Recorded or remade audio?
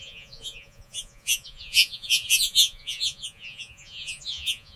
remade